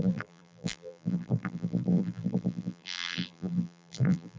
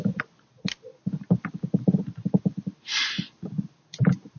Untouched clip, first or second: second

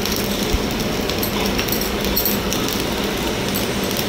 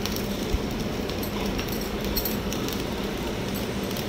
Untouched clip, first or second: first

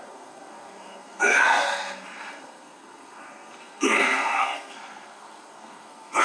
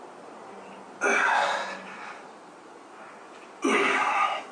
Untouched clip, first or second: second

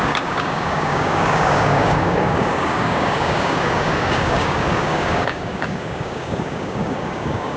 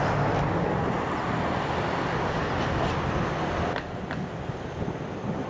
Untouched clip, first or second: second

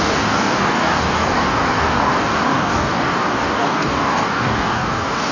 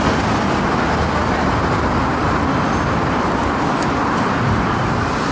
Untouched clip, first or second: second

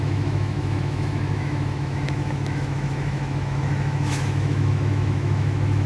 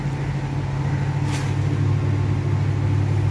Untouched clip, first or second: second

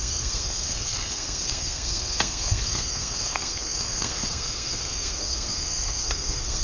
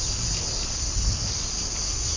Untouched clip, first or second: second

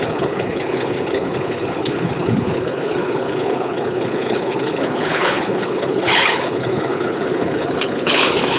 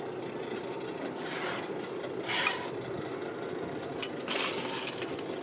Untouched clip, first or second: second